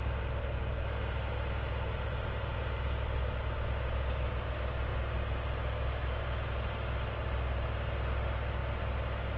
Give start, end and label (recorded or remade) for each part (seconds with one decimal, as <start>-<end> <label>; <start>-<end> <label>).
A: 0.0-9.4 recorded